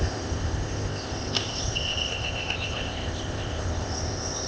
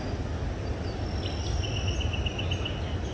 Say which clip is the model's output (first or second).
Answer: first